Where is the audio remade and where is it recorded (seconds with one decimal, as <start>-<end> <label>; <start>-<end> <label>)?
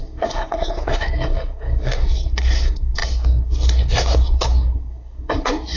0.0-5.8 remade